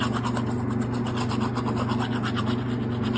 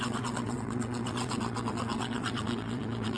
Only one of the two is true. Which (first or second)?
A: first